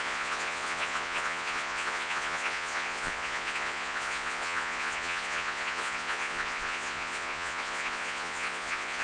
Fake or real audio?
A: fake